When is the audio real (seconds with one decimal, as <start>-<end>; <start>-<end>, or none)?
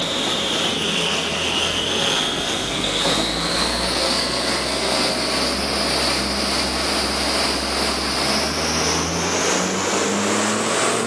0.0-0.7; 5.1-11.1